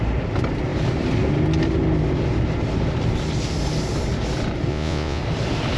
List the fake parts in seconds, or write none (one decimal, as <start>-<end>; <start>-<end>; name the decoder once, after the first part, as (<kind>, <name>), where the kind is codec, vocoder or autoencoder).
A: 4.7-5.2 (vocoder, Vocos)